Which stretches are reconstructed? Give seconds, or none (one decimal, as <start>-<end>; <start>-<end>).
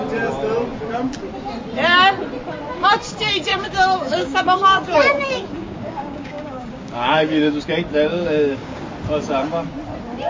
3.5-7.6; 8.1-8.8